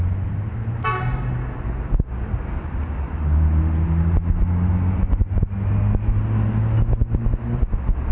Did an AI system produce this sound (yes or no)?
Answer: no